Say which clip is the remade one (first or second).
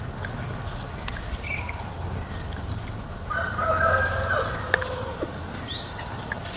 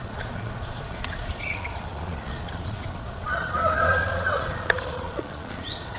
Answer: second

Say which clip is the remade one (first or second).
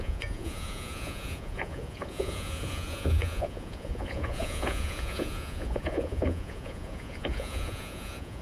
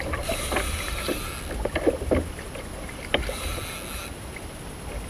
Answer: first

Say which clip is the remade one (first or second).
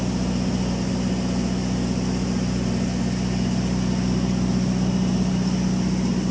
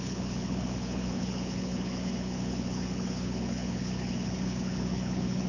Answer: second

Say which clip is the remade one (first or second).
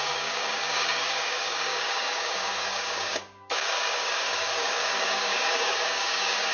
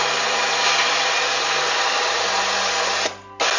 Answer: first